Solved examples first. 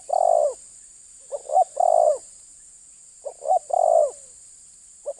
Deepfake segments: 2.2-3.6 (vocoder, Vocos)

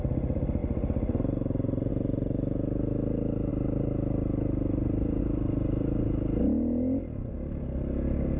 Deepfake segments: none